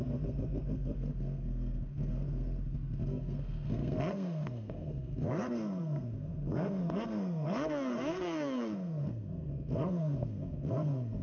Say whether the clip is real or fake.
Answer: fake